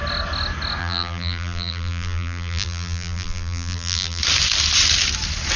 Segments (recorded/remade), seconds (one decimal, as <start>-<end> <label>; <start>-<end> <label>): 0.0-0.8 recorded; 0.8-4.2 remade; 4.2-5.6 recorded